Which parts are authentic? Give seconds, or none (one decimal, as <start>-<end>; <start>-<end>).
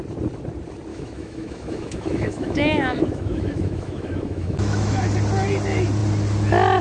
0.0-0.9; 5.0-6.8